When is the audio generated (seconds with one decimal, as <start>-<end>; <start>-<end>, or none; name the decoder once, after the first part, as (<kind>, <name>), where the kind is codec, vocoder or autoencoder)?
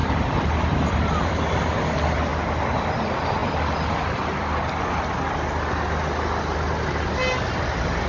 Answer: none